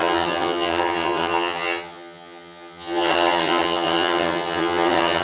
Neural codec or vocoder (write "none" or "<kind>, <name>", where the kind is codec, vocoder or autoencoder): vocoder, HiFi-GAN